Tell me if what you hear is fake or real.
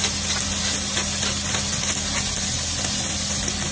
real